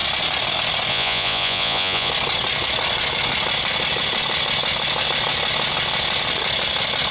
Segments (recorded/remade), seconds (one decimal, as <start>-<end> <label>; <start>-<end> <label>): 0.0-0.9 recorded; 0.9-2.1 remade; 2.1-7.1 recorded